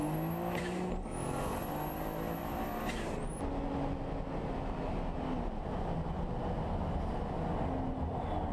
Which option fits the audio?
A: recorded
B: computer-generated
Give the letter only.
A